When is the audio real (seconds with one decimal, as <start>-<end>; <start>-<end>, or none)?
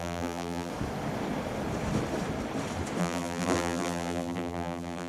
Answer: 0.7-3.0